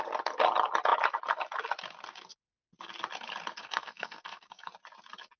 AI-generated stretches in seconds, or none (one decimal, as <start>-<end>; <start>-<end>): 3.6-4.7